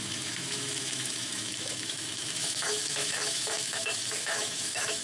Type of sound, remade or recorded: remade